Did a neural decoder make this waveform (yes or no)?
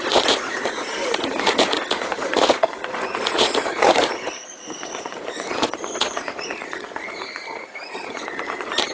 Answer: yes